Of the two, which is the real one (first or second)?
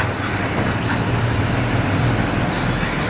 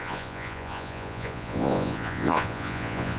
first